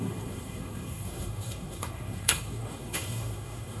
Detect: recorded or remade remade